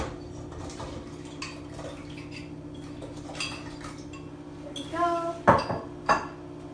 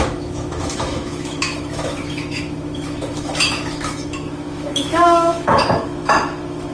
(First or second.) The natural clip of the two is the first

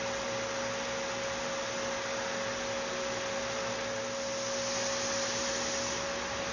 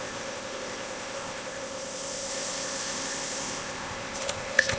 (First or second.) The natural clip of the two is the first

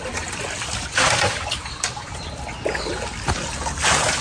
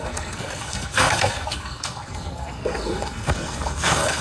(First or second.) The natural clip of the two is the first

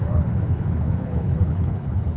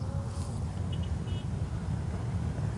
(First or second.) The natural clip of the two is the second